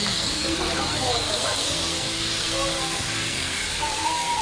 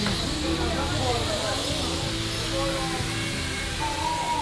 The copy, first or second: first